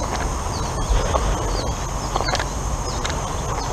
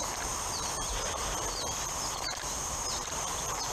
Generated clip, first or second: second